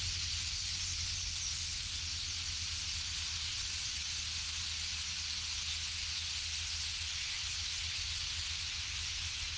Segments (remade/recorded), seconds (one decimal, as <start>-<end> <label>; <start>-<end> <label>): 0.0-3.5 recorded; 3.5-4.1 remade; 4.1-9.6 recorded